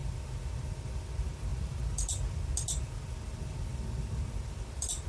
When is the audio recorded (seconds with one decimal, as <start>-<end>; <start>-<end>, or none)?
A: 0.0-5.1